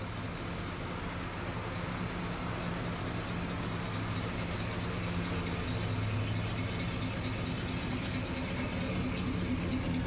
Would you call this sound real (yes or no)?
yes